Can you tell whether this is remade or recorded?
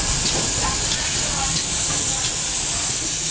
recorded